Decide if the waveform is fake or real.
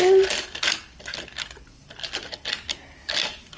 real